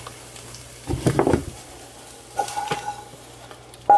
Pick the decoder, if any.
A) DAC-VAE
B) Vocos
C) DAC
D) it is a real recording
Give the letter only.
D